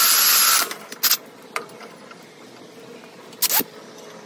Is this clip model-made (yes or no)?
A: no